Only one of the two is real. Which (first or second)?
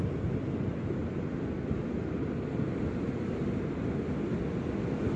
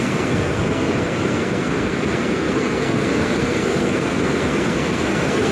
first